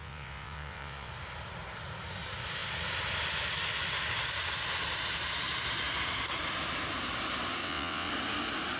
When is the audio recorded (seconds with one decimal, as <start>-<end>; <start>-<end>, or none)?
1.1-7.6; 8.1-8.8